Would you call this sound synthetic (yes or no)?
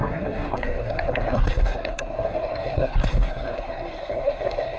yes